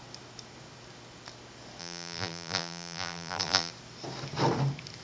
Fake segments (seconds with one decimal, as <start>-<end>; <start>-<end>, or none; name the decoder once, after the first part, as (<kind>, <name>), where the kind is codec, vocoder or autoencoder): 1.8-3.7 (vocoder, BigVGAN v2)